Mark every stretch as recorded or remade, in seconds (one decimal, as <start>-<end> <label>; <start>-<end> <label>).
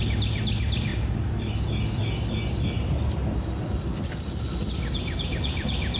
0.0-6.0 recorded